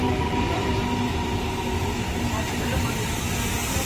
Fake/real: real